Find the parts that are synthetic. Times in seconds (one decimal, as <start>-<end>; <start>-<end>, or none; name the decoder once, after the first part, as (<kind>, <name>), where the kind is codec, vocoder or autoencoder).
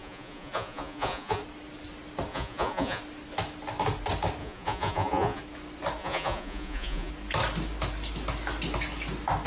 0.0-1.4 (vocoder, Vocos); 2.3-3.0; 4.4-5.4; 6.0-7.1